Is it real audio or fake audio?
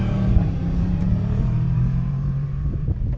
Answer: fake